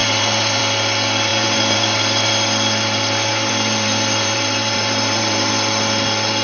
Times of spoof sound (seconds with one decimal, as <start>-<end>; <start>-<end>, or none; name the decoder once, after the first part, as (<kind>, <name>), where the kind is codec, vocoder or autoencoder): 0.0-0.6 (vocoder, BigVGAN v2); 1.3-2.3; 3.3-5.5